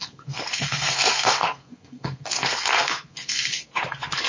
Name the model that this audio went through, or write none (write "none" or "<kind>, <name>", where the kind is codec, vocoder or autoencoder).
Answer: codec, SNAC